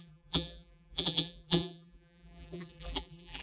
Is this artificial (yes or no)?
yes